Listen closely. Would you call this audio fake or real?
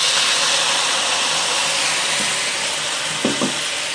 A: real